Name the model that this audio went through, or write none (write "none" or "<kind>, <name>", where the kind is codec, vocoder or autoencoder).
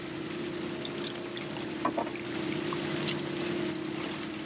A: none